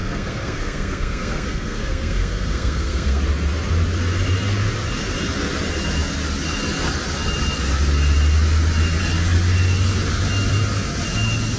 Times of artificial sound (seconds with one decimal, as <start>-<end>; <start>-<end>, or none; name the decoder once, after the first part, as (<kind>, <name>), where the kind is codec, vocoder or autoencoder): 0.0-3.2 (codec, SNAC)